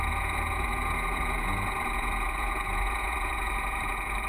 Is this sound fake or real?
fake